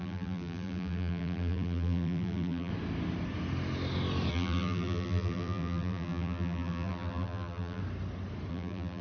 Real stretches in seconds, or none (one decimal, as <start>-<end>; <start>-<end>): 2.7-4.3; 7.8-8.5